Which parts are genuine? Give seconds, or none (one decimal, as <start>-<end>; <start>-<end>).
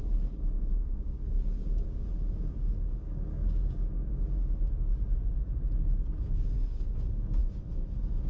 4.9-6.1